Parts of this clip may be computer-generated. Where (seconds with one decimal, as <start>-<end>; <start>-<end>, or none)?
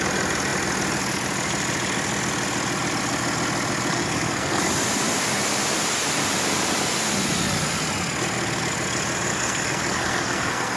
3.9-4.6; 9.3-10.8